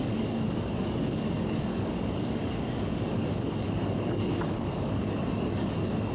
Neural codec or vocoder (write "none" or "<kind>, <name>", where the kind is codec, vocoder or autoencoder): codec, DAC